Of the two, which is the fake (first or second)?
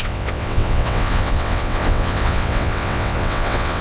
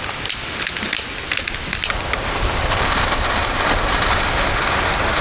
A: first